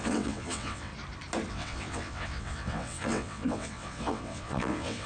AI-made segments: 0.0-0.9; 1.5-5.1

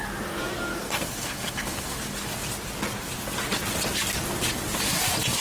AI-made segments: 0.7-2.0

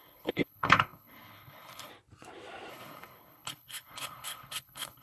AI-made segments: 0.0-1.9; 2.7-5.0

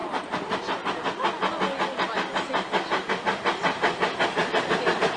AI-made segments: none

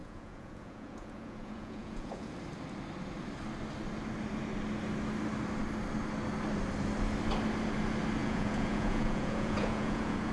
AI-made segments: 0.0-2.3; 8.2-10.3

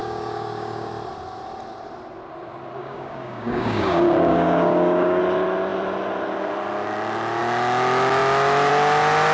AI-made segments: 0.0-0.9; 2.8-5.2

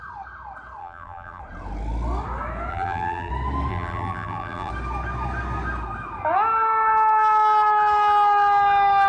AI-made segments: 0.8-1.4; 2.7-3.3; 3.7-4.7

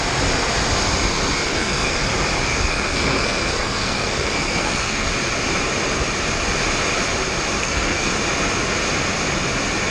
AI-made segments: 1.5-2.1; 2.5-5.1; 7.6-8.1